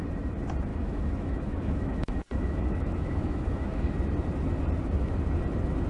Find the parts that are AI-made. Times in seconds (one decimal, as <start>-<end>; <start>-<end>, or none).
0.7-3.9